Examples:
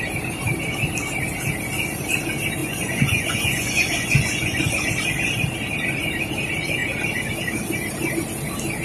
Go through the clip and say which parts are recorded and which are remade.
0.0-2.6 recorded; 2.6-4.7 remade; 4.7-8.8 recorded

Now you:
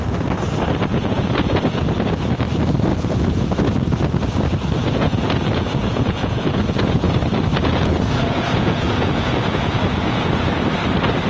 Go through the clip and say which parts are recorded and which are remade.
0.0-0.9 recorded; 0.9-2.1 remade; 2.1-2.9 recorded; 2.9-3.5 remade; 3.5-4.8 recorded; 4.8-7.1 remade; 7.1-7.6 recorded; 7.6-10.4 remade; 10.4-11.3 recorded

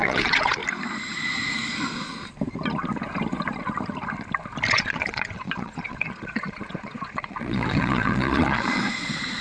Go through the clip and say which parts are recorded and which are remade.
0.0-0.6 remade; 0.6-4.7 recorded; 4.7-9.4 remade

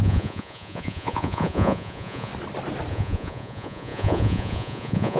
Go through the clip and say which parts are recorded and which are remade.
0.0-2.3 remade; 2.3-2.9 recorded; 2.9-5.2 remade